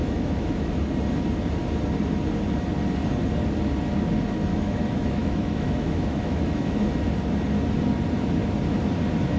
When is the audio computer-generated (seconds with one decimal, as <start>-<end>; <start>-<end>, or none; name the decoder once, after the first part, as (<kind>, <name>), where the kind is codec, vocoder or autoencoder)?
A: 0.0-0.7 (autoencoder, DAC-VAE); 4.5-6.8